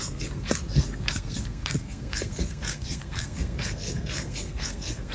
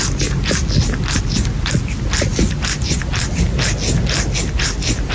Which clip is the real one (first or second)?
second